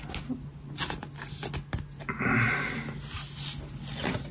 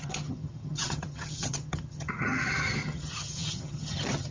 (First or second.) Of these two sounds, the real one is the first